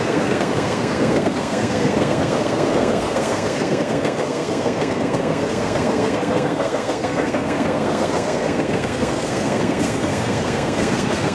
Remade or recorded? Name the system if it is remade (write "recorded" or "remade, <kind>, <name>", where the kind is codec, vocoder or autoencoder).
remade, codec, SNAC